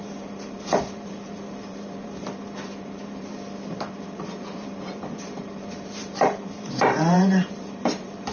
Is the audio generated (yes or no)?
yes